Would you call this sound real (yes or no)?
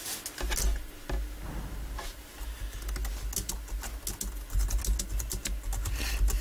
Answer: yes